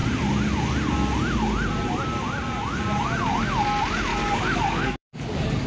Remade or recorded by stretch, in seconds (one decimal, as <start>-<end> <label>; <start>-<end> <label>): 0.0-4.1 recorded; 4.1-5.7 remade